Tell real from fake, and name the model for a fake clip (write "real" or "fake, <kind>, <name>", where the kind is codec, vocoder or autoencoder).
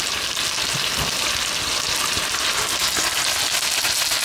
real